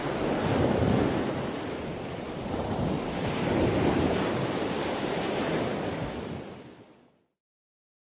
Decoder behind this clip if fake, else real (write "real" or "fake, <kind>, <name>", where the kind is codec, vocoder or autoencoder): real